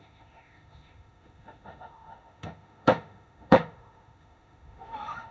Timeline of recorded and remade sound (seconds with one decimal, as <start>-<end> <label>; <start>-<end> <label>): 0.0-5.3 remade